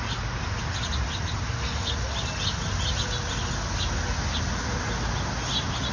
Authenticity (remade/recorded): recorded